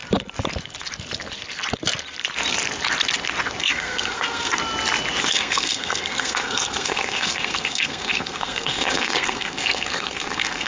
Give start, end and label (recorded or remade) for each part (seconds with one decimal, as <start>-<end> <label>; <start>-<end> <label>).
0.0-3.6 recorded; 3.6-4.6 remade; 4.6-5.3 recorded; 5.3-10.7 remade

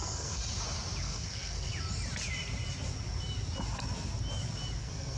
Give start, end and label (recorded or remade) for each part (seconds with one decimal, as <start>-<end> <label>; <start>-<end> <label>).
0.0-0.4 remade; 0.4-1.0 recorded; 1.0-1.7 remade; 1.7-4.8 recorded; 4.8-5.2 remade